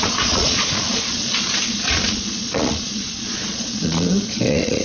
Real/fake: fake